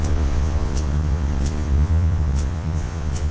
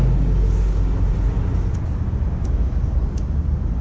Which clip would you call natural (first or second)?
second